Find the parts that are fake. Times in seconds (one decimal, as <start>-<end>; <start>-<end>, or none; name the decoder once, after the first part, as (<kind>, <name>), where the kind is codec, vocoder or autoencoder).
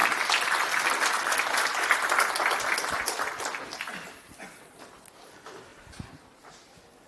none